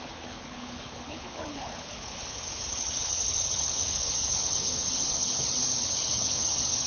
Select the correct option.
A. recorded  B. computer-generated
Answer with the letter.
B